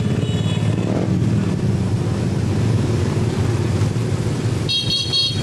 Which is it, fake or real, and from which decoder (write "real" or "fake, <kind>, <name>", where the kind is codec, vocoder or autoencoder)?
real